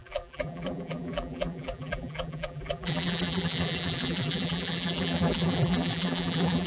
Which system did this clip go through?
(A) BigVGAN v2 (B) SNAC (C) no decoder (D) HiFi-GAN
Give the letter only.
A